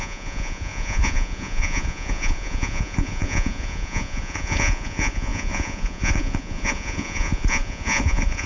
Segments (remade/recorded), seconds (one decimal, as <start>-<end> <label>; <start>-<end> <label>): 0.0-8.5 remade